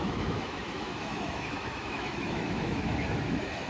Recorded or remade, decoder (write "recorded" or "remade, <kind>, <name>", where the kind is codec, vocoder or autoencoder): remade, autoencoder, DAC-VAE